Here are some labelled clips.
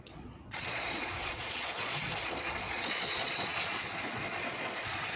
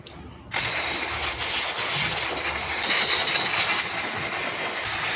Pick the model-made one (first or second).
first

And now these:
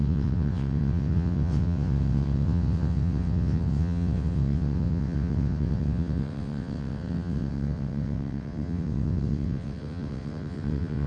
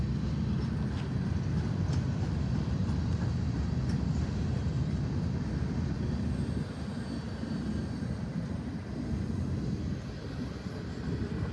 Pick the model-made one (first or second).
first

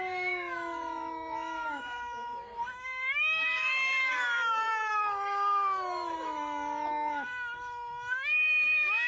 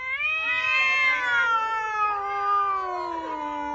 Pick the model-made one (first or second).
first